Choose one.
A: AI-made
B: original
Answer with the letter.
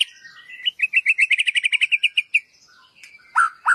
B